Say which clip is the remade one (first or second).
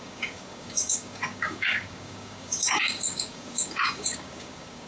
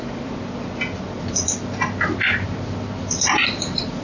first